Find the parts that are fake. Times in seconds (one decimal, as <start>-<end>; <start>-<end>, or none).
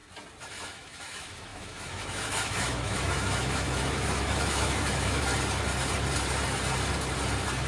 0.5-5.3